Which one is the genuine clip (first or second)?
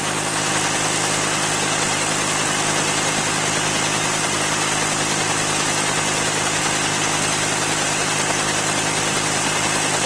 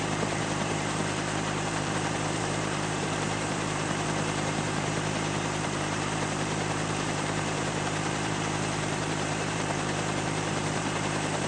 first